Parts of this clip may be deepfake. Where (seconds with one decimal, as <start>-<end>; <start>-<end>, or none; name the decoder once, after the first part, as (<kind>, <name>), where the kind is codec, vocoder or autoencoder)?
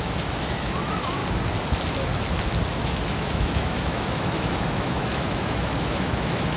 0.0-1.2 (autoencoder, DAC-VAE); 2.8-6.6